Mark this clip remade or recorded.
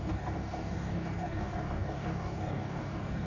remade